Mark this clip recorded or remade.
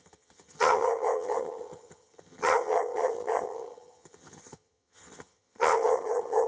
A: remade